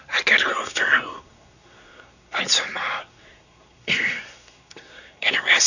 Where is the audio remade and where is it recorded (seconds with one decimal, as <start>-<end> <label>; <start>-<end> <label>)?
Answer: 0.0-0.5 recorded; 0.5-2.4 remade; 2.4-3.0 recorded; 3.0-5.7 remade